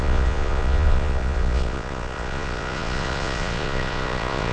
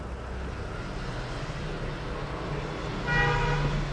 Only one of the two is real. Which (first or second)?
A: second